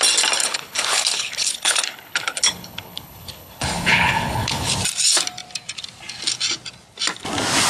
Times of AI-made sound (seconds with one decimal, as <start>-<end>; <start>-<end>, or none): 0.4-4.7